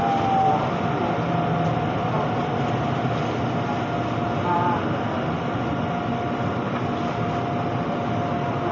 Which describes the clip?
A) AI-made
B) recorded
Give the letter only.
B